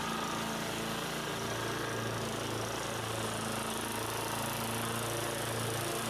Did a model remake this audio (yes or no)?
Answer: no